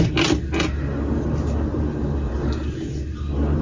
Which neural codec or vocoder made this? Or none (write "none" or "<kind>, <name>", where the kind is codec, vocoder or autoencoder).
none